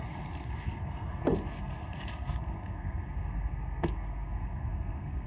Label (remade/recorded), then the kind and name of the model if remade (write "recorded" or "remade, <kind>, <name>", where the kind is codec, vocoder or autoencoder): remade, codec, SNAC